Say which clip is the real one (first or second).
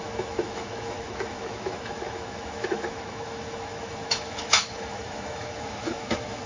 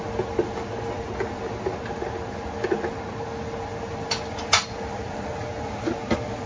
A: second